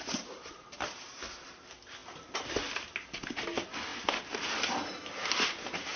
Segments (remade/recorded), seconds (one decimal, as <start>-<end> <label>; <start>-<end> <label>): 0.0-6.0 recorded